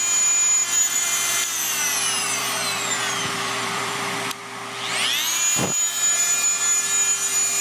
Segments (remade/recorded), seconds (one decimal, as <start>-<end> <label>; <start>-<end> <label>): 0.0-0.6 recorded; 0.6-4.3 remade; 4.3-7.6 recorded